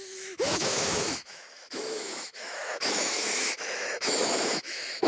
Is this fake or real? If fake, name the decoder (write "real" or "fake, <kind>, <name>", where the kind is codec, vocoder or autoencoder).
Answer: fake, autoencoder, DAC-VAE